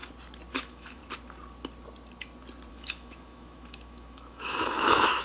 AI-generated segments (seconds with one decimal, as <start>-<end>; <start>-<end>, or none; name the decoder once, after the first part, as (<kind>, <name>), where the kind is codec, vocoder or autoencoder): 0.5-1.0 (autoencoder, DAC-VAE); 2.7-5.2